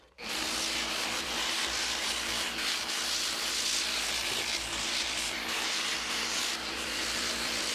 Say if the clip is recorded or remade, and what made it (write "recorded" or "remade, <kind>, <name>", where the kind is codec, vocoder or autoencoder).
remade, vocoder, BigVGAN v2